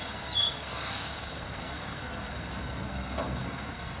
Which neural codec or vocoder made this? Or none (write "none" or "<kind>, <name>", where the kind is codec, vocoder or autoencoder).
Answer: codec, SNAC